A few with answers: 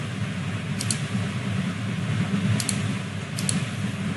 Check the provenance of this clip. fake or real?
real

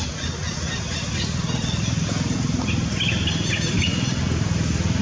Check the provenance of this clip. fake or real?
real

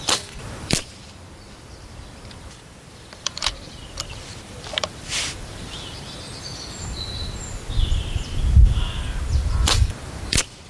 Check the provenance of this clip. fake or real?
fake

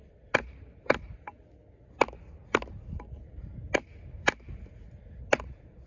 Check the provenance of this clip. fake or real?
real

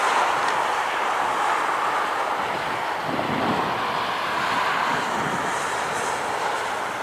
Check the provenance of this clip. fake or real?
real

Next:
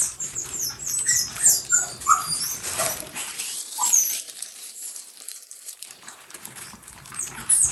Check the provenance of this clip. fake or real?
fake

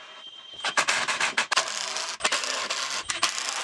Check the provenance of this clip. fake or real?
real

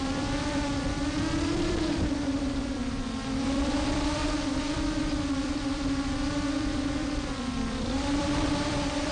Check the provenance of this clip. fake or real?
fake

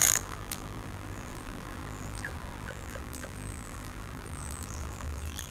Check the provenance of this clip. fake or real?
fake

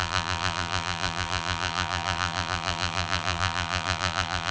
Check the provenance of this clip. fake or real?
fake